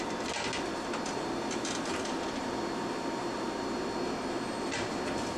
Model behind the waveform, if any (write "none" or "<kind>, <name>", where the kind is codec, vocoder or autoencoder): none